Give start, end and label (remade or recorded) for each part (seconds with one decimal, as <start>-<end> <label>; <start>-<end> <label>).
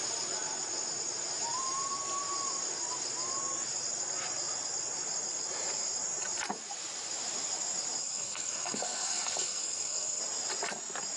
0.0-8.0 recorded; 8.0-10.2 remade; 10.2-11.2 recorded